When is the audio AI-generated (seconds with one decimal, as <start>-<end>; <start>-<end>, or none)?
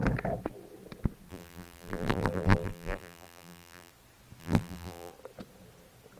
1.3-3.9; 4.4-5.1